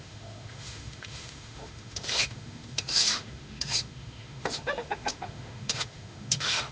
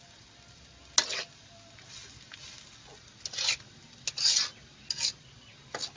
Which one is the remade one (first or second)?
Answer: first